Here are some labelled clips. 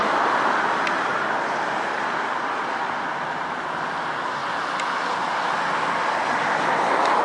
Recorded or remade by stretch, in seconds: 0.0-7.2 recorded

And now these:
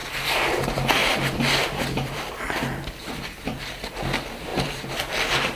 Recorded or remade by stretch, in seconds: 0.0-0.5 remade; 0.5-1.0 recorded; 1.0-3.8 remade; 3.8-4.5 recorded; 4.5-5.1 remade; 5.1-5.6 recorded

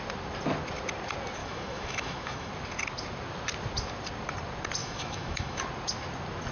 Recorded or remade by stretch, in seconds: 0.0-1.4 recorded; 1.4-2.5 remade; 2.5-4.8 recorded; 4.8-5.6 remade; 5.6-6.5 recorded

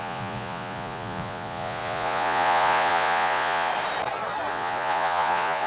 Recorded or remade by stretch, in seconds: 0.0-3.7 remade; 3.7-4.5 recorded; 4.5-5.7 remade

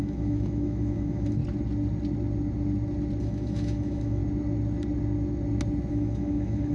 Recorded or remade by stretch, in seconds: 0.0-1.4 remade; 1.4-3.2 recorded; 3.2-4.2 remade; 4.2-5.9 recorded; 5.9-6.7 remade